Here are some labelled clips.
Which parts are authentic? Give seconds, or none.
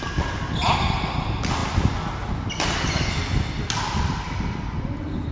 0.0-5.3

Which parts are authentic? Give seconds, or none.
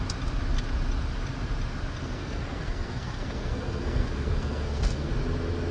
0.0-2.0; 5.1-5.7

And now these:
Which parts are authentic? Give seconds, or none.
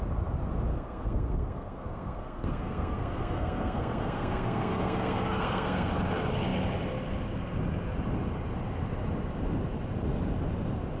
0.0-0.7; 5.9-11.0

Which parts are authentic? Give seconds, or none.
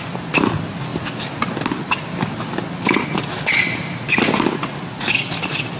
0.0-5.8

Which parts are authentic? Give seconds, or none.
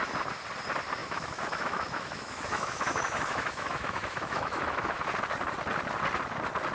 0.0-1.0; 5.0-6.7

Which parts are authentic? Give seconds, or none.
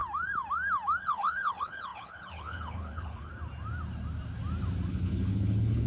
0.0-1.0; 3.3-4.9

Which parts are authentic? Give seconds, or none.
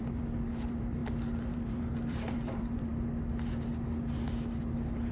2.9-5.1